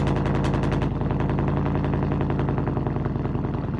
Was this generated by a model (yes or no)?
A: no